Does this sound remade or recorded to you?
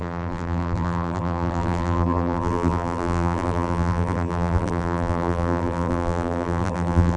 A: remade